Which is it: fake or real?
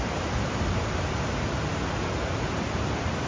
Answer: real